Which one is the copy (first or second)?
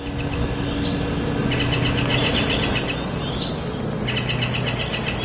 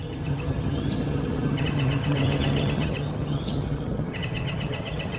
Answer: second